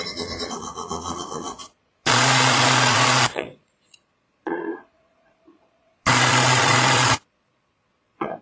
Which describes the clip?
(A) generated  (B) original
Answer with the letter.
A